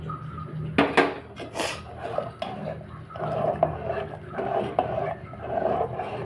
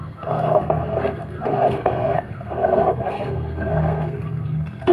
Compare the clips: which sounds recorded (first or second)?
first